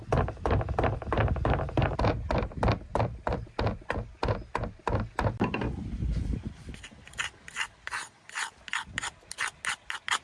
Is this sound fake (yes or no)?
no